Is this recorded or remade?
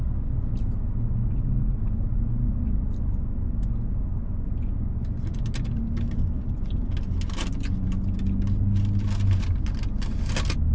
recorded